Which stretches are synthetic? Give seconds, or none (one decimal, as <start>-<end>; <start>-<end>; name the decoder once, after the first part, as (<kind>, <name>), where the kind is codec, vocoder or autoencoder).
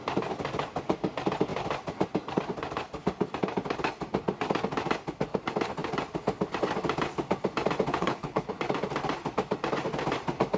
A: 7.9-8.5 (codec, HILCodec)